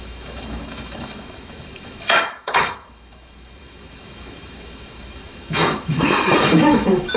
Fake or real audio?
fake